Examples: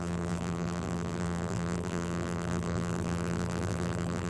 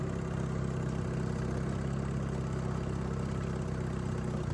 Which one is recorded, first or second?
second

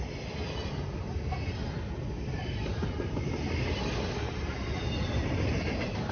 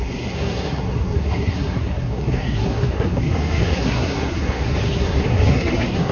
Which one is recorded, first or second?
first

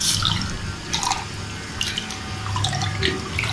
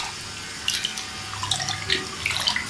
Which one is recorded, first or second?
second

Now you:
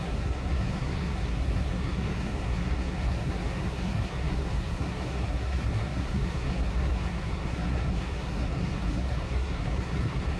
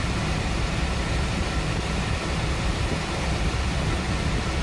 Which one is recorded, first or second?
second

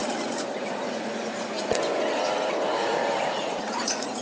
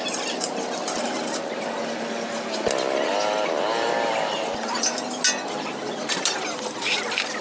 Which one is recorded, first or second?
second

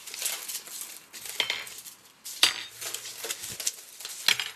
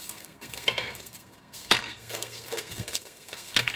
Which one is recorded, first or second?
first